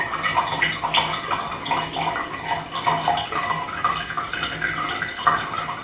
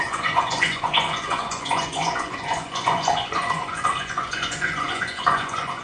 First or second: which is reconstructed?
second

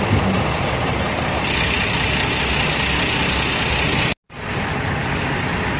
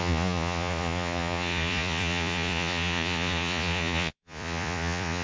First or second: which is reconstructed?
second